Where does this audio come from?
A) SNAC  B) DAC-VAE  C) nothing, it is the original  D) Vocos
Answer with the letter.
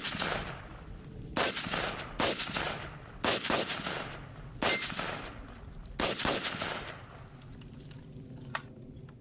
C